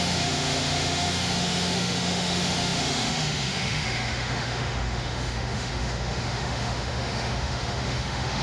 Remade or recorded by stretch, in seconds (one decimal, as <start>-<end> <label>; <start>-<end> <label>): 0.0-8.4 remade